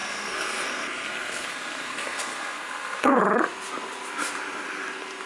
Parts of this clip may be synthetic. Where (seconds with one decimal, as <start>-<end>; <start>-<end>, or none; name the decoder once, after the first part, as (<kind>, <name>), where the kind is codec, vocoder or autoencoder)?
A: 0.0-3.2 (codec, SNAC)